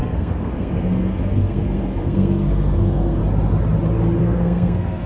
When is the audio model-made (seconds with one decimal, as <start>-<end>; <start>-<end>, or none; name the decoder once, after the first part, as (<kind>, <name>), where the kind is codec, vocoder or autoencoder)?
0.0-3.2 (codec, SNAC); 4.2-5.1